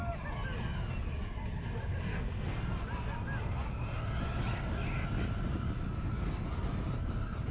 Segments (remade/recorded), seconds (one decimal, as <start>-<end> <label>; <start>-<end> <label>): 0.0-2.1 recorded; 2.1-2.6 remade; 2.6-7.5 recorded